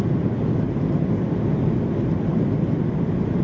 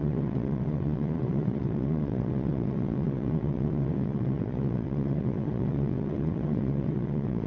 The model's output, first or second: second